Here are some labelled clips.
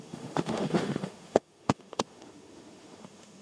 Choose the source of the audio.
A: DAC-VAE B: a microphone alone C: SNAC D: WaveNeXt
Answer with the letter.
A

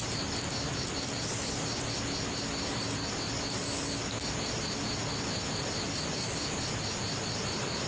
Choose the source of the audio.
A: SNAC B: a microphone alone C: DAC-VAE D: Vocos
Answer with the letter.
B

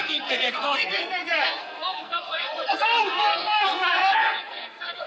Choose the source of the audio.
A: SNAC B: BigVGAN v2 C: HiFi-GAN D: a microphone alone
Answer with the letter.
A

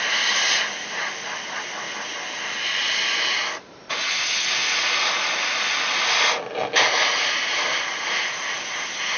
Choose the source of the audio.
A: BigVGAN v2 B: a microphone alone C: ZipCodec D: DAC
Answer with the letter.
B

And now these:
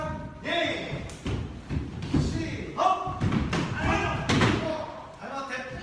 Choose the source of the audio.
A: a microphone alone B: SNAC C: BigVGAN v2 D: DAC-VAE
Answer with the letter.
A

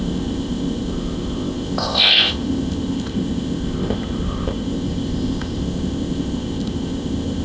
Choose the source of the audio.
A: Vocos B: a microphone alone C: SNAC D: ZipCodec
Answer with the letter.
D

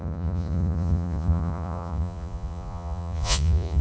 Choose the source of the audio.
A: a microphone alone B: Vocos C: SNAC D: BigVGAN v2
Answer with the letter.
B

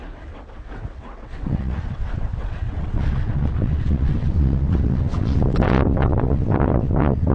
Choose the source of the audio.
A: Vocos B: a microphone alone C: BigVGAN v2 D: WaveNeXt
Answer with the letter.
D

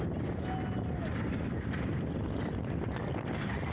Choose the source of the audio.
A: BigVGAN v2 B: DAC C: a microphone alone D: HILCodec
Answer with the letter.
C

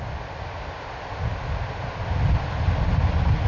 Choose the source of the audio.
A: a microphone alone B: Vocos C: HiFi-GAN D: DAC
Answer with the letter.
A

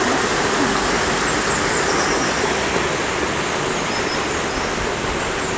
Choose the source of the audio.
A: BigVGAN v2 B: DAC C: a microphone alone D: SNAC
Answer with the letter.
C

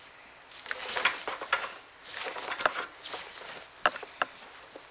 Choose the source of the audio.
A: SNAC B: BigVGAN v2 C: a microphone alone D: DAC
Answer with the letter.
C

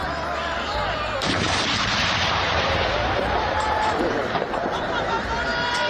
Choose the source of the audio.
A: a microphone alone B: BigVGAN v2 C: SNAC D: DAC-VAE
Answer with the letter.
B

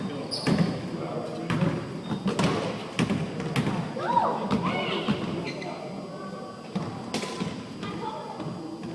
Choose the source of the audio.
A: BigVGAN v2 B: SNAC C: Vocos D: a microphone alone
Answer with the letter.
D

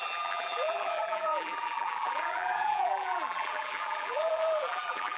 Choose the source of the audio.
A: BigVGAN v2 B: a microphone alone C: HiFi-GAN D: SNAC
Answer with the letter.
A